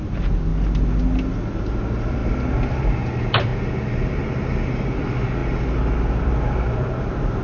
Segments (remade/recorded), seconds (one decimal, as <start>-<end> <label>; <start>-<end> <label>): 0.0-0.5 remade; 0.5-1.5 recorded; 1.5-2.2 remade; 2.2-2.9 recorded; 2.9-5.4 remade; 5.4-6.2 recorded; 6.2-7.4 remade